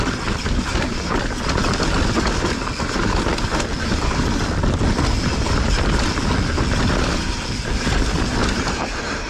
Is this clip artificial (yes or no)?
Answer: no